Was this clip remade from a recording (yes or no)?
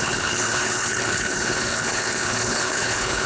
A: yes